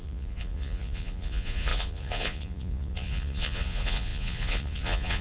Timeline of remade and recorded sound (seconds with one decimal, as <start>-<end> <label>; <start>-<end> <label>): 0.0-5.2 remade